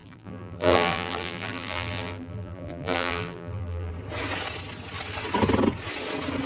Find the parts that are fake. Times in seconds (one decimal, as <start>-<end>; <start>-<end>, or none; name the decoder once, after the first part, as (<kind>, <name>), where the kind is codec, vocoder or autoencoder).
0.0-3.9 (vocoder, BigVGAN v2)